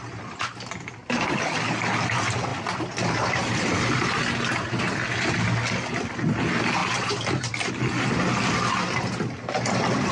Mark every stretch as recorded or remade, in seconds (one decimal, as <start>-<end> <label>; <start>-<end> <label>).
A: 0.0-2.5 recorded; 2.5-4.0 remade; 4.0-8.8 recorded; 8.8-10.1 remade